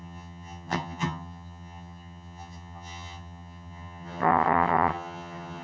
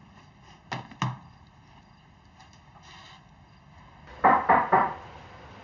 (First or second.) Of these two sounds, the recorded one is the second